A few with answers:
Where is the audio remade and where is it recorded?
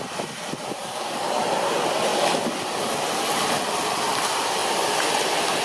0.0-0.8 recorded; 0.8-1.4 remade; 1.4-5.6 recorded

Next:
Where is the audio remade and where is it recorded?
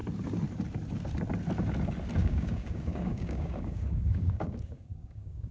0.0-2.2 recorded; 2.2-5.5 remade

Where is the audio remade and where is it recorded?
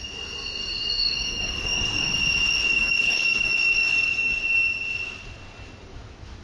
0.0-0.6 recorded; 0.6-2.2 remade; 2.2-2.7 recorded; 2.7-4.4 remade; 4.4-6.4 recorded